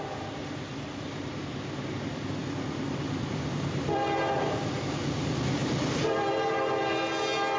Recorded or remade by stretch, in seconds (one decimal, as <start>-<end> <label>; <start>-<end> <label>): 0.0-2.4 recorded; 2.4-4.2 remade; 4.2-5.6 recorded; 5.6-6.3 remade; 6.3-7.6 recorded